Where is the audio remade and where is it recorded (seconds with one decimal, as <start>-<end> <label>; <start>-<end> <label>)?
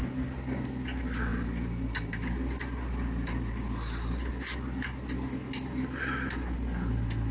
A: 0.0-7.3 recorded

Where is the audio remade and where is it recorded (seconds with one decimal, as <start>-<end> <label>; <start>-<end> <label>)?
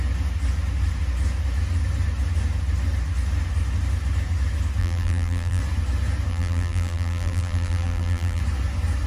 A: 0.0-4.8 recorded; 4.8-5.6 remade; 5.6-6.3 recorded; 6.3-8.4 remade; 8.4-9.1 recorded